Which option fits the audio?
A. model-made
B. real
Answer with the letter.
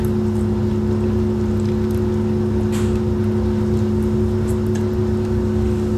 B